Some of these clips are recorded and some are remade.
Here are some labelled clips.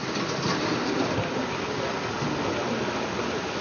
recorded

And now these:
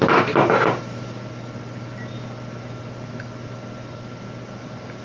recorded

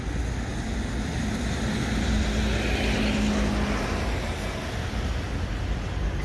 recorded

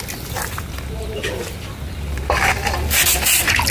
recorded